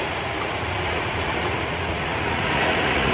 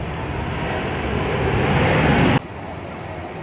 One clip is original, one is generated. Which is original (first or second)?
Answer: second